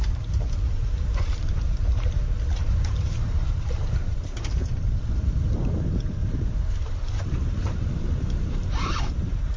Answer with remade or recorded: remade